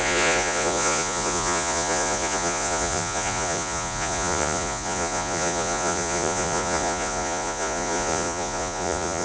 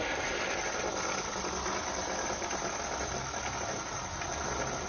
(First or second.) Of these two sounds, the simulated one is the first